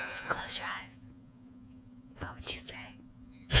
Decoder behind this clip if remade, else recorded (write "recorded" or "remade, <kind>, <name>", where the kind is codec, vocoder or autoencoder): remade, vocoder, Vocos